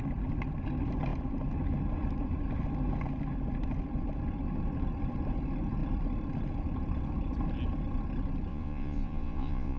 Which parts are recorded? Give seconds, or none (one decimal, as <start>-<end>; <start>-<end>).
0.0-8.5